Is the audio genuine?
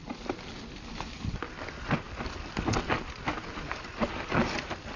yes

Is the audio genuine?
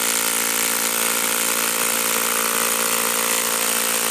yes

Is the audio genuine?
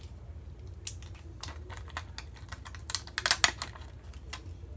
yes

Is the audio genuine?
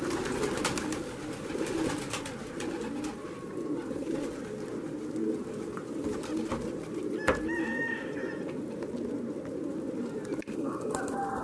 yes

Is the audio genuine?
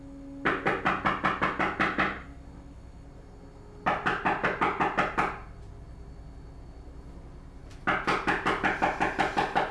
yes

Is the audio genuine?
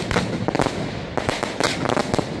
yes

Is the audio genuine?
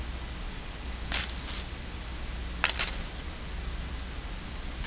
yes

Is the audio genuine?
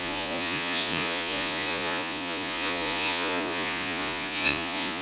no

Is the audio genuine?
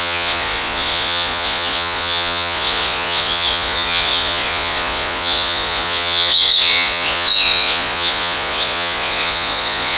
no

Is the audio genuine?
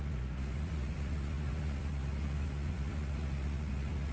no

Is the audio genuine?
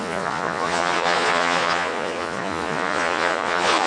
no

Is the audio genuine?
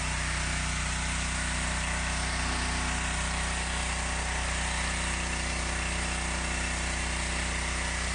yes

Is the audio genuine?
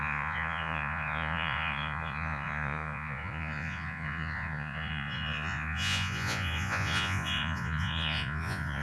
no